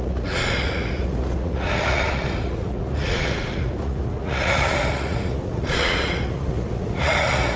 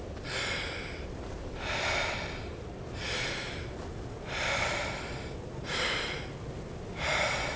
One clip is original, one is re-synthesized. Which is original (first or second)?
second